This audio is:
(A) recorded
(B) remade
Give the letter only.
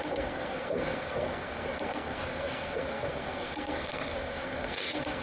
B